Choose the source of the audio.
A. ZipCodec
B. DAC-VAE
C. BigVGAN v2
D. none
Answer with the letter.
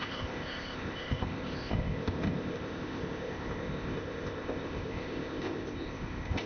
A